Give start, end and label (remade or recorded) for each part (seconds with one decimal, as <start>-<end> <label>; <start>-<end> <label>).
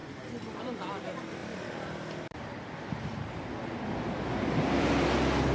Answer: 0.0-5.5 recorded